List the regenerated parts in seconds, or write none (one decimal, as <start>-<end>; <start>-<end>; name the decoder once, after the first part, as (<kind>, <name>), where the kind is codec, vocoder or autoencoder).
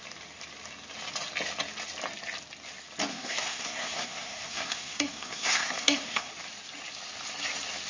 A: 3.1-6.3 (codec, SNAC)